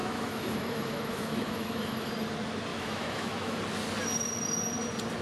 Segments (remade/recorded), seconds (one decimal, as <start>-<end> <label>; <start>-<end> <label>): 0.0-2.1 remade; 2.1-2.7 recorded; 2.7-3.6 remade; 3.6-5.2 recorded